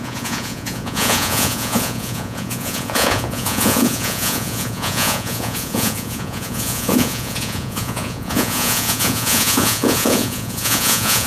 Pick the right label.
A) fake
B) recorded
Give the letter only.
A